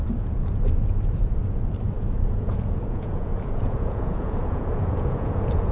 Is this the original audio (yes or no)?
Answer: no